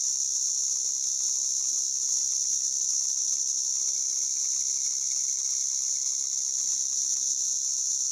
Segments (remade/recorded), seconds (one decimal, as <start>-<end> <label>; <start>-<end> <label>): 0.0-2.1 recorded; 2.1-3.5 remade; 3.5-8.1 recorded

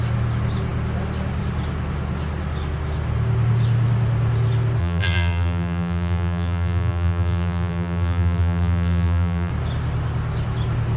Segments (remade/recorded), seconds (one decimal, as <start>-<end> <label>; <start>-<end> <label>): 0.0-4.8 recorded; 4.8-9.5 remade; 9.5-11.0 recorded

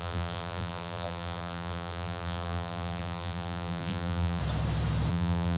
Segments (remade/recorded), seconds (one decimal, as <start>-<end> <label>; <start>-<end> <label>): 0.0-4.4 remade; 4.4-5.1 recorded; 5.1-5.6 remade

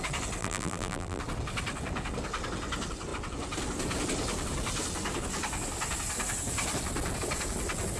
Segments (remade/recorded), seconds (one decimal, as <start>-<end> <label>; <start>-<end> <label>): 0.0-0.4 recorded; 0.4-1.2 remade; 1.2-8.0 recorded

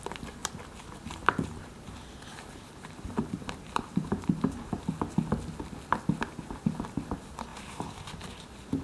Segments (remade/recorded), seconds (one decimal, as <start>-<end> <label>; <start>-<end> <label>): 0.0-0.4 recorded; 0.4-4.7 remade; 4.7-7.5 recorded; 7.5-8.3 remade; 8.3-8.8 recorded

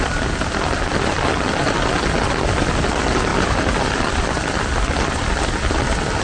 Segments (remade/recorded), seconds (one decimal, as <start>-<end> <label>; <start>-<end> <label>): 0.0-3.3 recorded; 3.3-5.3 remade; 5.3-6.2 recorded

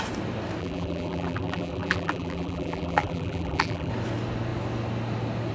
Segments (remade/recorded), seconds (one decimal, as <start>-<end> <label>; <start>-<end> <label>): 0.0-0.6 recorded; 0.6-3.9 remade; 3.9-5.5 recorded

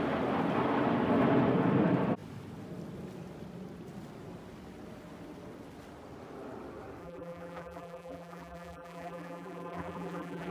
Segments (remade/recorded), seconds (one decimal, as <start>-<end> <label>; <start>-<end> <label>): 0.0-7.0 recorded; 7.0-10.5 remade